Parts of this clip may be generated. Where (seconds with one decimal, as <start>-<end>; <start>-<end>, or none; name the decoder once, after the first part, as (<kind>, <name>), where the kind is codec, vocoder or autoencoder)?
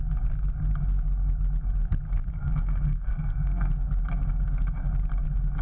2.3-3.7 (codec, SNAC)